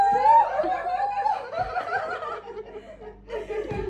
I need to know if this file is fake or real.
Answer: real